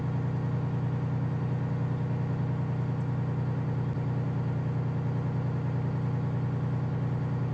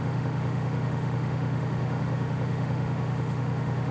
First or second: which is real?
first